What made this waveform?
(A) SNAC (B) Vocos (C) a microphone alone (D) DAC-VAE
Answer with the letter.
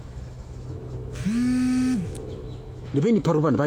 D